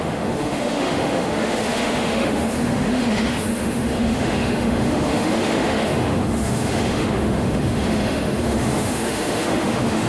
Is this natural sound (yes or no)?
no